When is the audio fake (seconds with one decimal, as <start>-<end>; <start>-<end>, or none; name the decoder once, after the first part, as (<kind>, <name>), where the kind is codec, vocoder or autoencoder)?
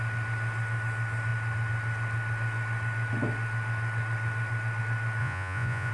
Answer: 5.2-5.9 (vocoder, Vocos)